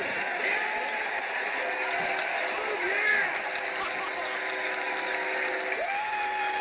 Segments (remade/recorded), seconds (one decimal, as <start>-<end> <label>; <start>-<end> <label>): 0.0-6.6 recorded